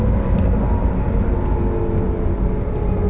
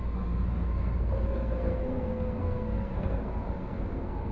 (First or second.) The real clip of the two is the first